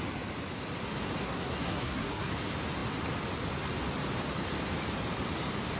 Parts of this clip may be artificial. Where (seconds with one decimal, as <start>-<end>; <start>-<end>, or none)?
1.2-2.3